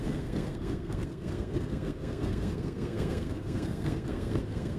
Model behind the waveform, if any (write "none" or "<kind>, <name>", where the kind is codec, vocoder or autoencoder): codec, SNAC